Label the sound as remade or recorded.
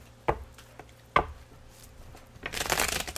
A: recorded